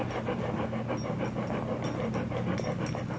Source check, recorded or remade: recorded